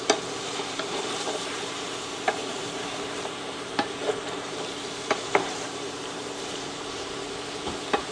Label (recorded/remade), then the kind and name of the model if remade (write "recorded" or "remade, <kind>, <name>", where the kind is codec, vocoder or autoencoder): remade, vocoder, BigVGAN v2